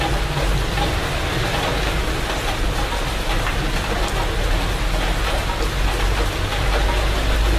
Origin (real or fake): real